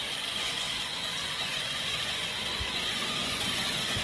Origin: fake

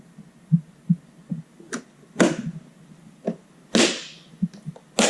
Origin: real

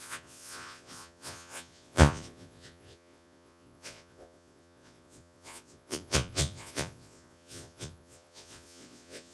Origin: fake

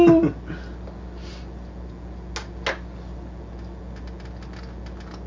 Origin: real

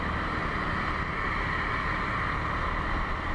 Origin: real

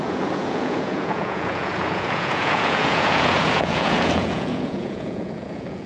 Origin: fake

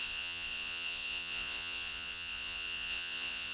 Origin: fake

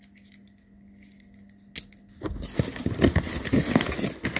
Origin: real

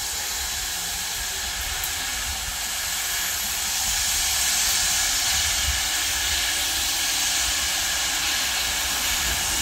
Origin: real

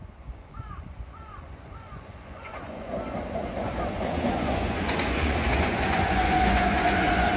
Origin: fake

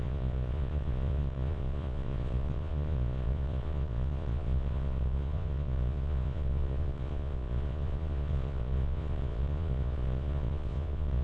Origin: fake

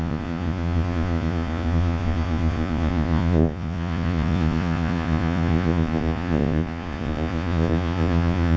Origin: fake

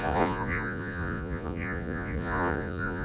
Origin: fake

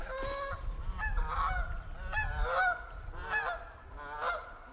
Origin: real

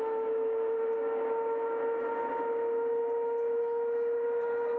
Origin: real